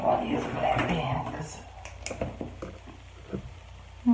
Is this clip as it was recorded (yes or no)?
yes